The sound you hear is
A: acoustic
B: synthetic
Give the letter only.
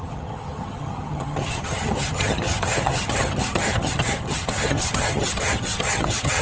B